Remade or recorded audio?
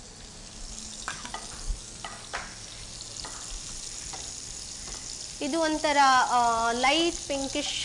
recorded